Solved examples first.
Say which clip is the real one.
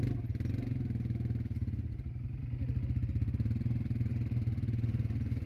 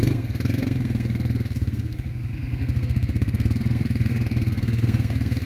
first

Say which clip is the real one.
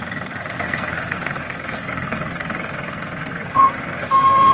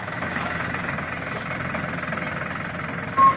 second